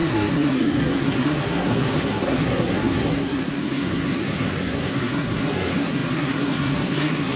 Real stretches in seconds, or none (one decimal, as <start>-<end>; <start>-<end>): none